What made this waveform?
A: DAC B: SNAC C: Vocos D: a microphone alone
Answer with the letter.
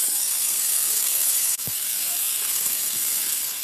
B